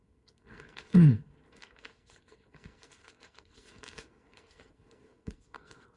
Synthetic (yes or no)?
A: yes